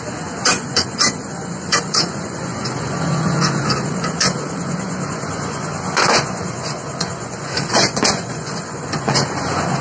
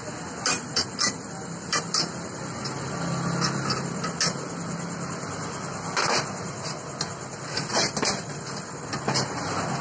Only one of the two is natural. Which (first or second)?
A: second